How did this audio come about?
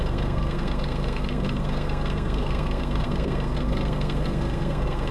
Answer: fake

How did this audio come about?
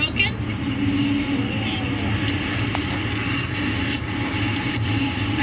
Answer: real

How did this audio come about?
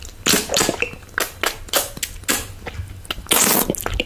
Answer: real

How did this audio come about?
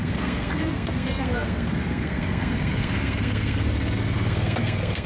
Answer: fake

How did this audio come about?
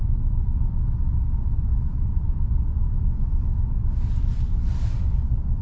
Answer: real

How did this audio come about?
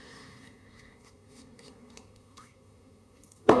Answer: fake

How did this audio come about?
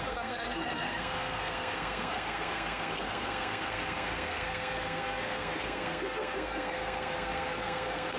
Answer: fake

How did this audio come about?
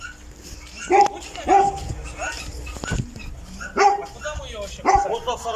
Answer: real